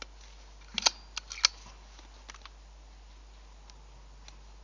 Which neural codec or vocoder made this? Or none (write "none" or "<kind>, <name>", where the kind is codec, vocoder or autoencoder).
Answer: none